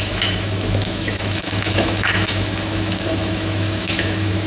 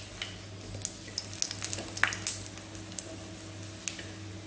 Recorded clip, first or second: second